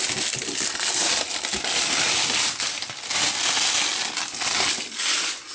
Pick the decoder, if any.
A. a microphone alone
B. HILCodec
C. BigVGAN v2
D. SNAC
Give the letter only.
A